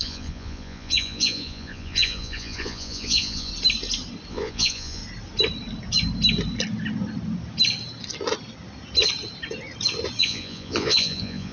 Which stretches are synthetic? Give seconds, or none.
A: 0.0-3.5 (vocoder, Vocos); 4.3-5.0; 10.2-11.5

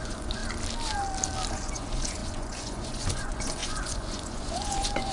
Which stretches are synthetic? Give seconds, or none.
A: 0.0-0.4 (vocoder, Vocos); 1.5-5.1

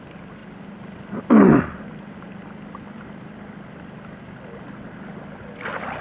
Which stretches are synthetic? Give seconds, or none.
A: none

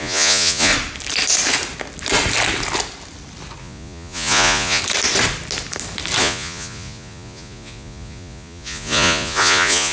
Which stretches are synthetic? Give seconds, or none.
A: 0.0-0.7 (vocoder, Vocos); 3.6-4.8; 6.2-9.9

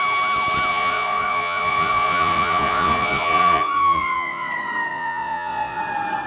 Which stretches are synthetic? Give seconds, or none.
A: 0.7-4.5 (vocoder, Vocos); 4.9-5.8

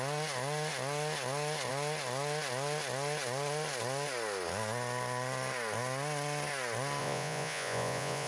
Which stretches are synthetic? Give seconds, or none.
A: 7.0-8.3 (vocoder, Vocos)

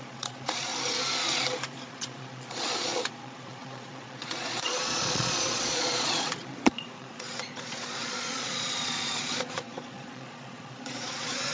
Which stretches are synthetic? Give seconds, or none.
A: 0.0-0.7 (vocoder, Vocos); 1.9-11.5